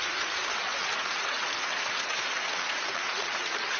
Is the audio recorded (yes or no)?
no